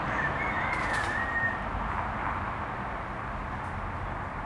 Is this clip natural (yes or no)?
yes